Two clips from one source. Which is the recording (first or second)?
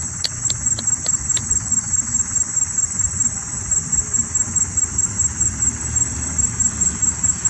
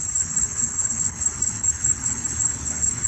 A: first